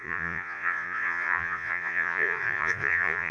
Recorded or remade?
remade